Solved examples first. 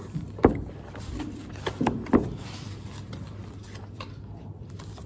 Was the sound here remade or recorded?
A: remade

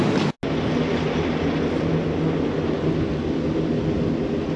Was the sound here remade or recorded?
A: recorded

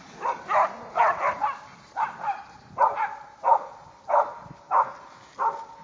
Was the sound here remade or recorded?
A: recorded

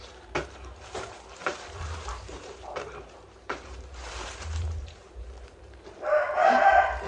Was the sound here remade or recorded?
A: remade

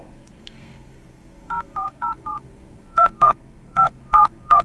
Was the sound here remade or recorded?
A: remade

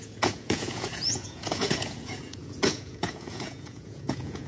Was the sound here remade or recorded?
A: remade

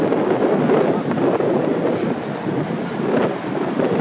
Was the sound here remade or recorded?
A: recorded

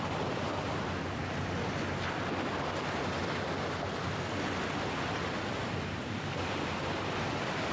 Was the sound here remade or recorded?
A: recorded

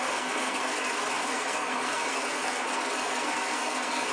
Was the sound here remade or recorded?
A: remade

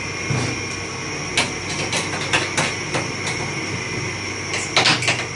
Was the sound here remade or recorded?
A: recorded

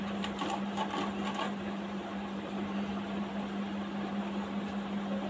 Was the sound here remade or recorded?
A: recorded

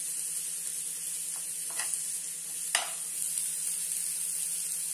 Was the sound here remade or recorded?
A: recorded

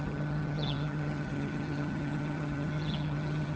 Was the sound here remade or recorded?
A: remade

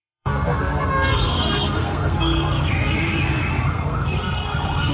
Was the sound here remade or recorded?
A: remade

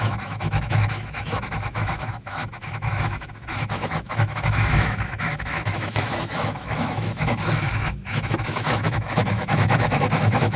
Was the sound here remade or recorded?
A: remade